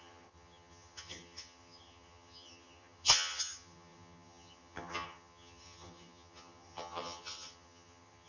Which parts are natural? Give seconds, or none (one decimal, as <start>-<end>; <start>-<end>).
none

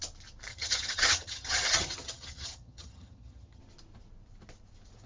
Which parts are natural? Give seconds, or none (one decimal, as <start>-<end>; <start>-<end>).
0.0-0.5; 3.6-5.1

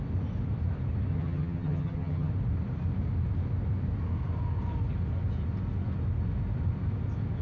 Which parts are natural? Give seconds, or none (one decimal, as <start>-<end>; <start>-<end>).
0.0-1.1; 2.3-7.4

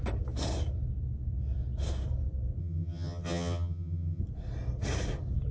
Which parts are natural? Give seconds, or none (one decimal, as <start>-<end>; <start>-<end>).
0.0-2.6; 4.2-5.5

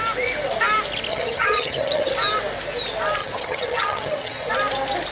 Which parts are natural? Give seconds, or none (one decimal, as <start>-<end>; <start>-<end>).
0.0-1.1; 2.1-3.2; 4.5-5.1

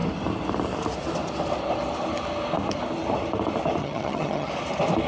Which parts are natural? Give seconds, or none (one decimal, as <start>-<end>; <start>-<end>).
0.0-3.8; 4.5-5.1

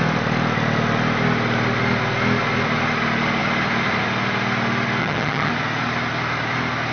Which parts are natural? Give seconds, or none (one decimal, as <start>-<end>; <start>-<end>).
0.0-5.0; 5.5-6.9